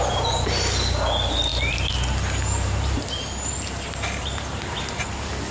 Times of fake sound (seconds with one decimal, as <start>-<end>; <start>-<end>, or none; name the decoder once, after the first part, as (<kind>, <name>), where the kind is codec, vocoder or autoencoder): none